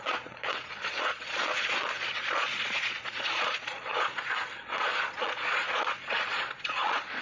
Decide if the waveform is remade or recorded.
remade